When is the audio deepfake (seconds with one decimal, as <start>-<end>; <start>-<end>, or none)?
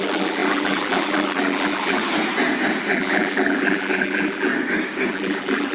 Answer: 0.0-2.0; 2.9-4.5; 5.1-5.7